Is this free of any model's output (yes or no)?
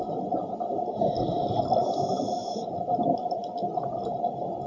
yes